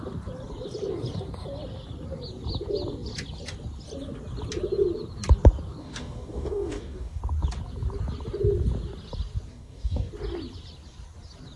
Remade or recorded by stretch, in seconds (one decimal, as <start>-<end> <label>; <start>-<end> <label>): 0.0-5.8 recorded; 5.8-7.2 remade; 7.2-9.5 recorded; 9.5-10.1 remade; 10.1-11.6 recorded

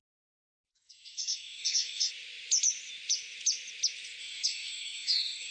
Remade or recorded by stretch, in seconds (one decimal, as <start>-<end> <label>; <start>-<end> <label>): 0.0-0.7 recorded; 0.7-2.1 remade; 2.1-4.2 recorded; 4.2-5.5 remade

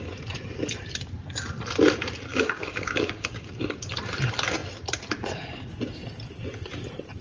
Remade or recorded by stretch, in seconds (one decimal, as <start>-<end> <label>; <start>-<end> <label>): 0.0-2.3 recorded; 2.3-3.5 remade; 3.5-7.2 recorded

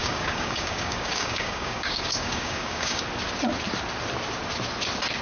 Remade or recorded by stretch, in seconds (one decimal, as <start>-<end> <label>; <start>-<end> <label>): 0.0-3.0 remade; 3.0-5.2 recorded

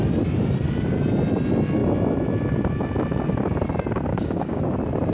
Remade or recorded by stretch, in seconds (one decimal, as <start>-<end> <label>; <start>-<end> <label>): 0.0-4.1 recorded; 4.1-4.6 remade; 4.6-5.1 recorded

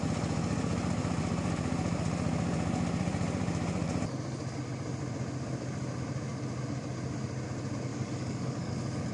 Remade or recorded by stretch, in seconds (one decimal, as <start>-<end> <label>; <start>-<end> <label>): 0.0-7.9 recorded; 7.9-8.7 remade; 8.7-9.1 recorded

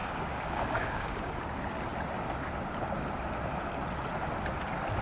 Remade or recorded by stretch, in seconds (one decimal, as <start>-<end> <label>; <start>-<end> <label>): 0.0-1.2 remade; 1.2-5.0 recorded

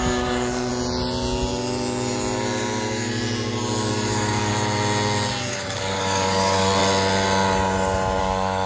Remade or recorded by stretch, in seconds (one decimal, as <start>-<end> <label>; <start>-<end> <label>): 0.0-0.7 remade; 0.7-3.9 recorded; 3.9-4.5 remade; 4.5-5.5 recorded; 5.5-6.8 remade; 6.8-8.2 recorded; 8.2-8.7 remade